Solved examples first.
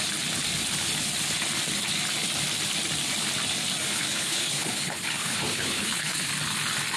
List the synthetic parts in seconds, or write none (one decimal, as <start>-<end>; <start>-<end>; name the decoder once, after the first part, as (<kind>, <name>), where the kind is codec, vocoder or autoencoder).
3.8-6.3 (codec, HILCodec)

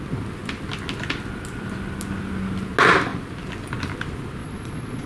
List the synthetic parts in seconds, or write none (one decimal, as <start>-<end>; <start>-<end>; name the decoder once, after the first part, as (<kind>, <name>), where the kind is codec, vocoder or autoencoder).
4.4-5.1 (vocoder, Vocos)

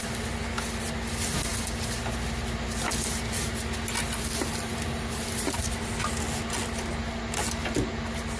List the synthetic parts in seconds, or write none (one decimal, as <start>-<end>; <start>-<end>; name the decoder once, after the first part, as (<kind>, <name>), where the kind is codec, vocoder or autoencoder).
none

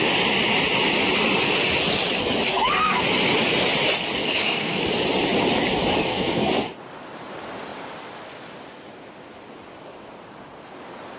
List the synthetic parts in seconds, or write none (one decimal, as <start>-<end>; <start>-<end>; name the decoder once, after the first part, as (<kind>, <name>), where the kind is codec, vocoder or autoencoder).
2.5-3.0 (codec, SNAC); 4.2-4.8; 6.0-6.5

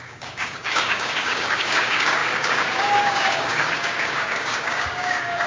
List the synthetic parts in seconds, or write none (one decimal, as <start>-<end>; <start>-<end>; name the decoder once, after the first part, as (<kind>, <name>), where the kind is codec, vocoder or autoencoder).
0.0-5.5 (codec, DAC)

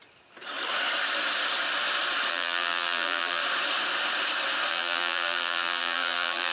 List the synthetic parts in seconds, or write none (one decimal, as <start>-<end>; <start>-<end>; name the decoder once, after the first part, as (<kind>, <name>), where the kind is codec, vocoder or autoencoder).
2.3-3.4 (vocoder, BigVGAN v2); 4.7-6.5

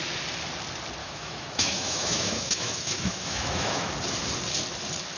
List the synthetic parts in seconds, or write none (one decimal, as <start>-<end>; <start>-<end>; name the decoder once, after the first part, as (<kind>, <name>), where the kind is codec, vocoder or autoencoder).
1.0-3.9 (autoencoder, DAC-VAE)